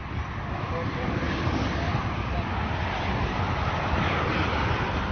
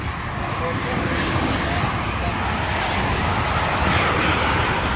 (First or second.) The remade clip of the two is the first